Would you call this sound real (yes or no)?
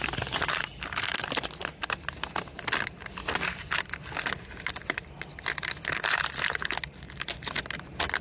yes